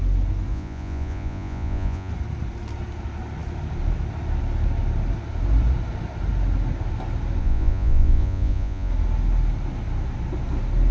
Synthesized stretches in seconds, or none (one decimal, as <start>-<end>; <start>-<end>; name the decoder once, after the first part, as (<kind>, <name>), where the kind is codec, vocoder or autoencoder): 0.5-2.1 (vocoder, Vocos); 7.4-8.9